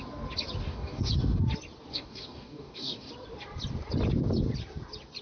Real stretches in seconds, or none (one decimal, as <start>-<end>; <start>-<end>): 0.0-0.6; 1.1-1.9; 3.1-5.2